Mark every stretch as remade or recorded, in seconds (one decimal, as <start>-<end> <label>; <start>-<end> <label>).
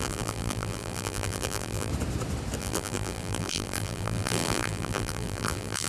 0.0-1.9 remade; 1.9-2.6 recorded; 2.6-5.9 remade